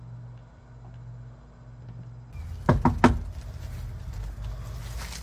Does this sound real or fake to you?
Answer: real